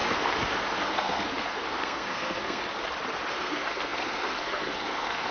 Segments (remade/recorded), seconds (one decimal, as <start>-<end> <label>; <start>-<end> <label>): 0.0-2.6 remade; 2.6-3.3 recorded; 3.3-5.3 remade